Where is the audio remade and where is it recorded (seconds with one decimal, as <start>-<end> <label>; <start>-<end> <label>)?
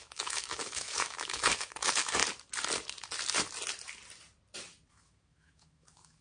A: 0.0-2.2 remade; 2.2-4.9 recorded; 4.9-6.2 remade